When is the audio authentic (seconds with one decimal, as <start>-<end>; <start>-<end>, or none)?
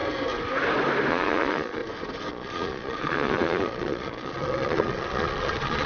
0.0-1.1; 1.8-2.3